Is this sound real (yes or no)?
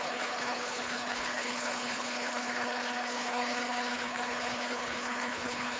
no